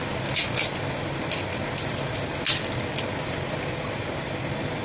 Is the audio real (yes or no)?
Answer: yes